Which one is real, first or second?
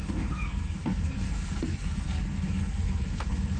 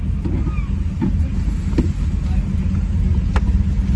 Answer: second